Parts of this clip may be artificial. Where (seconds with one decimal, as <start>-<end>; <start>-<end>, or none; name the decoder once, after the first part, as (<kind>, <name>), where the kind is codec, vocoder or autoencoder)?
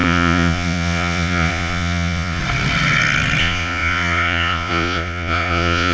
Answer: 0.0-2.4 (vocoder, Vocos); 3.4-5.9